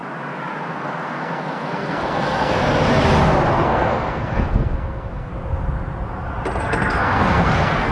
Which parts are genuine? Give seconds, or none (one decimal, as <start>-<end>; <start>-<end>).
0.0-0.7; 2.6-3.5; 5.3-6.6